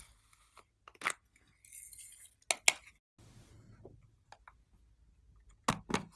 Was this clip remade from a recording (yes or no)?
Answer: no